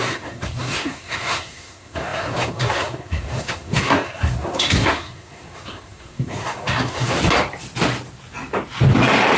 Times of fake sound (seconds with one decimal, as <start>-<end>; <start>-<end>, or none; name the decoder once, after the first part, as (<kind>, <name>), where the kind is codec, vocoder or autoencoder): 0.0-7.2 (codec, SNAC)